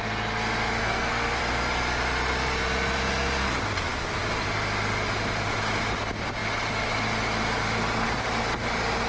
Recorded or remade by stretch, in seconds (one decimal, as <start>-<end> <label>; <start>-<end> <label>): 0.0-0.8 recorded; 0.8-1.4 remade; 1.4-9.1 recorded